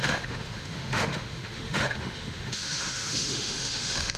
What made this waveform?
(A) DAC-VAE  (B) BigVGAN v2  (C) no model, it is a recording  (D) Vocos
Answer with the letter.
A